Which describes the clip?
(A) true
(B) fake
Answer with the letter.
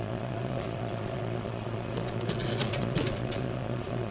B